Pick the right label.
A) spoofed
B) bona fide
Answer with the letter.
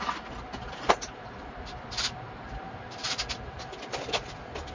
B